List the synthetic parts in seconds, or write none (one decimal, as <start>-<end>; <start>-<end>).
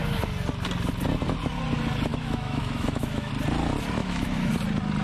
2.1-3.3; 4.0-4.5